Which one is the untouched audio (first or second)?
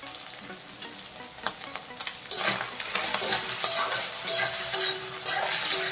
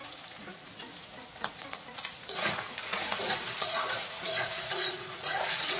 first